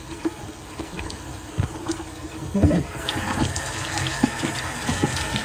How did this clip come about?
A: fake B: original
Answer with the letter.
A